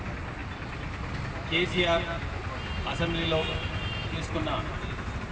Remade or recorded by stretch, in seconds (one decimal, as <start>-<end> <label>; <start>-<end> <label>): 0.0-5.3 recorded